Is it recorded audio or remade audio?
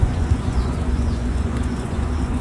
remade